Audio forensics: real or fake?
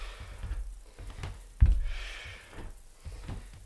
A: real